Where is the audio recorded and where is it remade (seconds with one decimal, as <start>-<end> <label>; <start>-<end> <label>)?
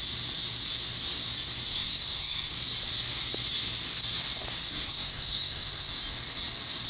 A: 0.0-1.7 recorded; 1.7-2.5 remade; 2.5-4.7 recorded; 4.7-5.9 remade; 5.9-6.9 recorded